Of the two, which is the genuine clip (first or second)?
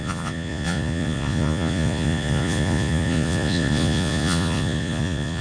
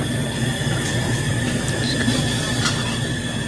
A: second